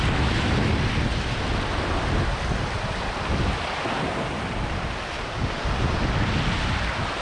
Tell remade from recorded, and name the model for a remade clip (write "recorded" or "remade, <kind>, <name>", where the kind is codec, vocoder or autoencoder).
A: recorded